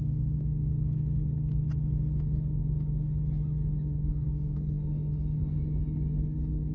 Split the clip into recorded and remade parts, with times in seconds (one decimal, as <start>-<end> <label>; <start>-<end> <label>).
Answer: 0.0-4.1 recorded; 4.1-5.6 remade; 5.6-6.7 recorded

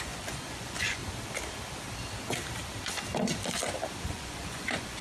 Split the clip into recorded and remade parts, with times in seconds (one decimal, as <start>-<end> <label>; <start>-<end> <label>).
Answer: 0.0-1.0 remade; 1.0-4.0 recorded; 4.0-5.0 remade